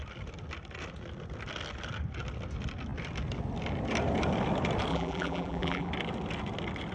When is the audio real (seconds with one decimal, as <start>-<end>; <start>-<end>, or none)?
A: 0.0-4.9; 5.9-6.9